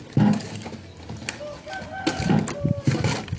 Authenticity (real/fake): real